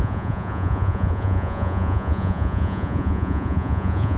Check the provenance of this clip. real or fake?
fake